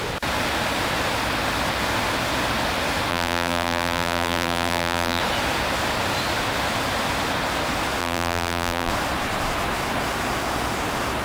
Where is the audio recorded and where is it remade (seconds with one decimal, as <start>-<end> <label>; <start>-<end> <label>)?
0.0-3.1 recorded; 3.1-5.2 remade; 5.2-8.0 recorded; 8.0-8.9 remade; 8.9-11.2 recorded